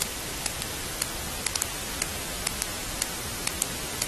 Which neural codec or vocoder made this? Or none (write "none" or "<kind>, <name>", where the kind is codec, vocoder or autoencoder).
none